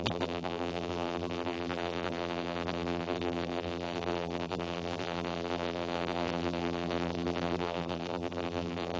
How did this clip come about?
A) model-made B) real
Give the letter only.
A